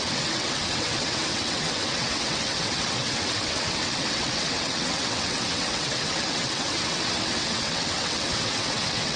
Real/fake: fake